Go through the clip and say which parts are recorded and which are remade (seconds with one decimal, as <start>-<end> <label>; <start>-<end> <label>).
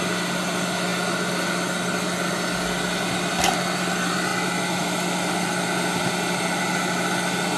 0.0-7.6 recorded